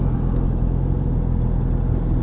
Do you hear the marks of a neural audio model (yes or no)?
no